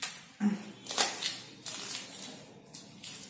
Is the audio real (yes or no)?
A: yes